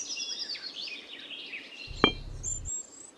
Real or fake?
real